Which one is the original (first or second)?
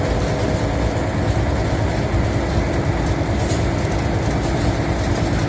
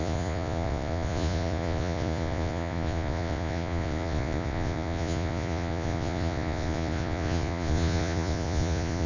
first